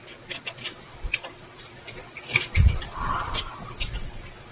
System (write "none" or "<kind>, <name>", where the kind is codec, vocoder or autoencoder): vocoder, Vocos